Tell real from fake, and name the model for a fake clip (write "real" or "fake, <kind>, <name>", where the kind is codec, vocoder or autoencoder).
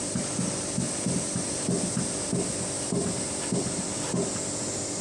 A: real